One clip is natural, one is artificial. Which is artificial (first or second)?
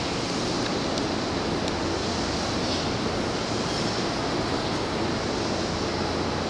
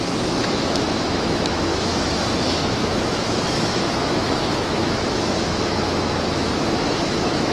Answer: second